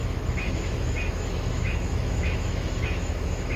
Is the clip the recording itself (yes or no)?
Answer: no